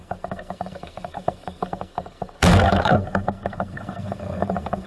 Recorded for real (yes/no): no